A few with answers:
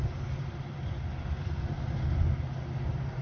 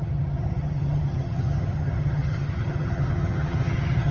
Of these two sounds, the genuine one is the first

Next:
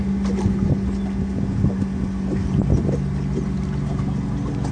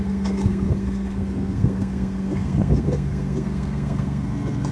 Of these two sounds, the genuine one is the first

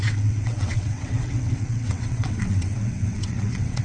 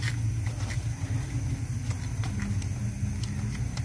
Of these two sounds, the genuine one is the second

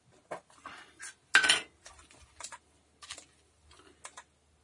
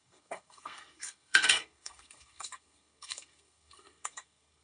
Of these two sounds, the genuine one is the first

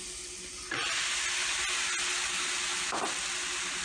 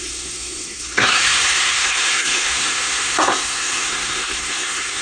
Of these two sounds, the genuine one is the first